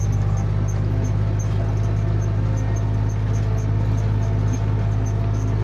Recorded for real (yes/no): yes